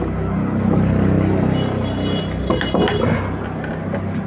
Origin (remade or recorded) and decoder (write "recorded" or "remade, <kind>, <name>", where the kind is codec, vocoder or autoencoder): recorded